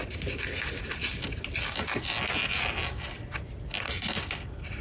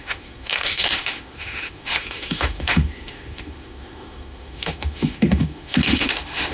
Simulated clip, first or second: second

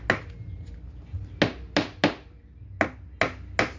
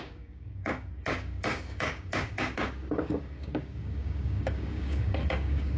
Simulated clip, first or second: second